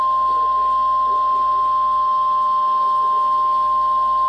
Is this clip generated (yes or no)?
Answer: no